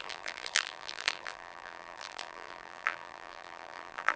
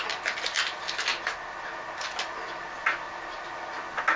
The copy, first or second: first